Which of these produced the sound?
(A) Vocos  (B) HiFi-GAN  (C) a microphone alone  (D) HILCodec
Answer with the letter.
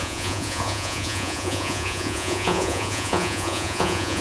A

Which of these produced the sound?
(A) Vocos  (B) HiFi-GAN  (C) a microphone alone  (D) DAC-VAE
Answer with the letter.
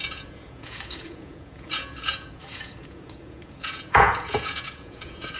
A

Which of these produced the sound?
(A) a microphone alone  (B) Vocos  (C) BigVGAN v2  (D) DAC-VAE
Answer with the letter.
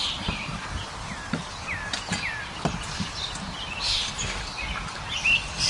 A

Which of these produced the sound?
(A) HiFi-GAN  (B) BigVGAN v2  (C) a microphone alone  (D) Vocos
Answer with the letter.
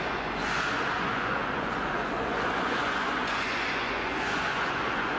D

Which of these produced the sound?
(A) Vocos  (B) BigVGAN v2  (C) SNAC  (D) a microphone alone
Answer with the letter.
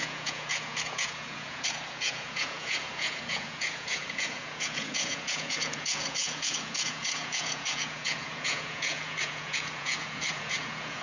A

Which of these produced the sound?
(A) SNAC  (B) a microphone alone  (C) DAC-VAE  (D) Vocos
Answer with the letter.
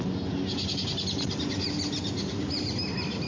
B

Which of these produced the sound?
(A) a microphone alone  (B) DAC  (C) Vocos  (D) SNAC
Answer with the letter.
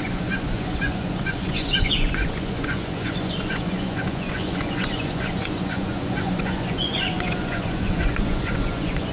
C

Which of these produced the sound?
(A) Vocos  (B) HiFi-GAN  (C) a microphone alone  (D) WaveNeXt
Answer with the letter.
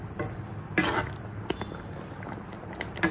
C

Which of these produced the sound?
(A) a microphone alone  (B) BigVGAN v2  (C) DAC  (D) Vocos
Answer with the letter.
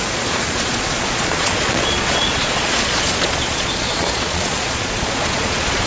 D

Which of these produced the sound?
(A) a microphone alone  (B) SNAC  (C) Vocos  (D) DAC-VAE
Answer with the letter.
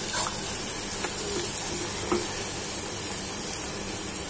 A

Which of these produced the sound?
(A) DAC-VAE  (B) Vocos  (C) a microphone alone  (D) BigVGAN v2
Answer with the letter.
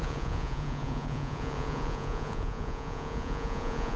B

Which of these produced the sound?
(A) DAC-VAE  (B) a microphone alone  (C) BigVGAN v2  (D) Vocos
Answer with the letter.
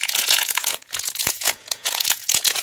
D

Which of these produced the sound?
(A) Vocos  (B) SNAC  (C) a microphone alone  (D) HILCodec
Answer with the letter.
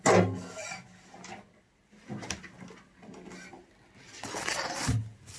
C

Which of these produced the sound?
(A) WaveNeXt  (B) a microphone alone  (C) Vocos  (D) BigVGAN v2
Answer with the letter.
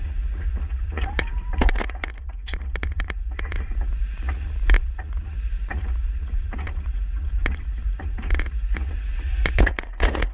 C